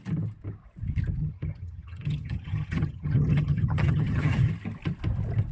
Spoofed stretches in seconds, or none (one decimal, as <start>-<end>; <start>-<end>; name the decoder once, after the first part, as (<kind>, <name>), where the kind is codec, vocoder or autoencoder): 1.2-4.5 (vocoder, HiFi-GAN)